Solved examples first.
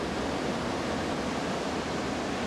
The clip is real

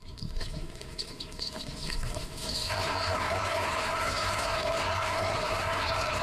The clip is fake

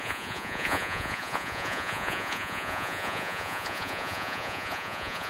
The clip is fake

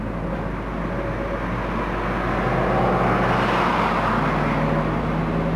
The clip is real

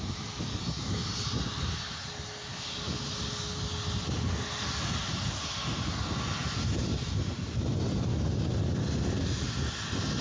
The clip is real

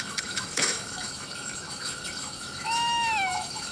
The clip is fake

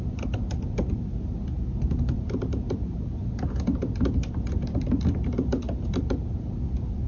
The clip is real